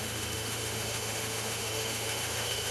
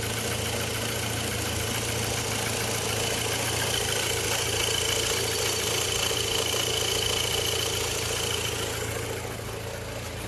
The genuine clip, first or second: second